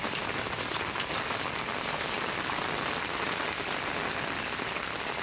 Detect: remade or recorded recorded